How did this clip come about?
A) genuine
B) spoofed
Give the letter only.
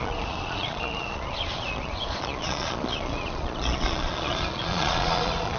B